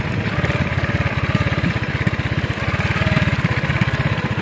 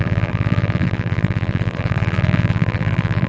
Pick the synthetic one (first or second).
second